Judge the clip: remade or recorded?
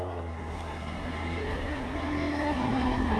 remade